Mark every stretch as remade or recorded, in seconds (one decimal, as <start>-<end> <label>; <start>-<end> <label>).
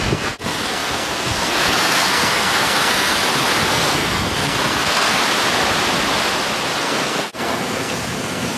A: 0.0-3.2 remade; 3.2-3.7 recorded; 3.7-5.2 remade; 5.2-6.8 recorded; 6.8-8.6 remade